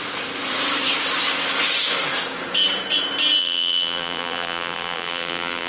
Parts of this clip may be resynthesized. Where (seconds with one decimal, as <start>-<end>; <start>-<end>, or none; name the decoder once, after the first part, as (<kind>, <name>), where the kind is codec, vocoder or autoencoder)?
3.4-5.7 (vocoder, BigVGAN v2)